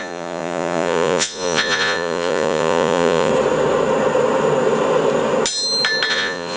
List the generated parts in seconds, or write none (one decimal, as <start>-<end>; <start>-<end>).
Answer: 0.0-3.3; 6.1-6.6